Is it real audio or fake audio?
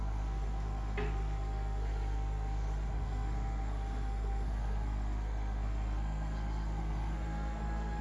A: fake